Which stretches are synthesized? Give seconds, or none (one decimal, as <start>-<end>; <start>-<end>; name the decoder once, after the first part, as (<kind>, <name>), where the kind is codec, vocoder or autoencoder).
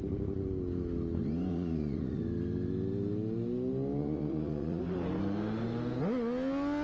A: 1.5-2.2 (vocoder, Vocos); 4.0-4.8